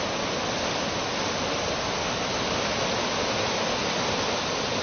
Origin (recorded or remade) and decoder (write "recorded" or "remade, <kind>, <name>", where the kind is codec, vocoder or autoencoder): recorded